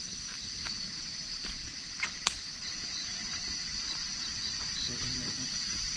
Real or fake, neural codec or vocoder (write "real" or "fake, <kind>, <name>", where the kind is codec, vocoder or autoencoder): fake, vocoder, BigVGAN v2